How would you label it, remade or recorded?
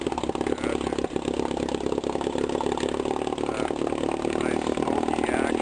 recorded